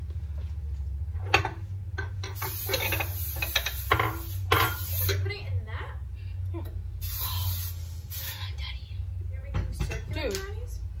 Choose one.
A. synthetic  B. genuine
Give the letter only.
B